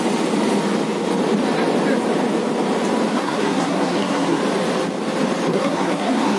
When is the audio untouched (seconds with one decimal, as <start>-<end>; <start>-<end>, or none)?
0.0-3.1; 4.4-5.5